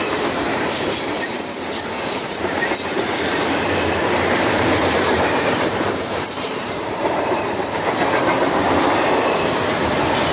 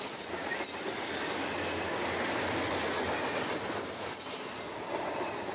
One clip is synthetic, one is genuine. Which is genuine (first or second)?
second